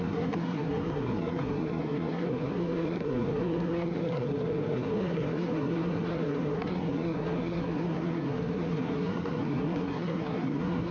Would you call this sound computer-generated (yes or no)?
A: yes